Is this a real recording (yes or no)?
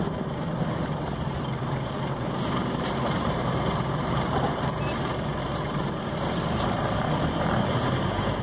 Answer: no